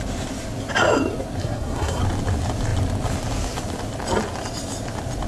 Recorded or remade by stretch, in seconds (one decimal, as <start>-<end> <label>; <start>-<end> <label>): 0.0-1.4 recorded; 1.4-2.0 remade; 2.0-5.3 recorded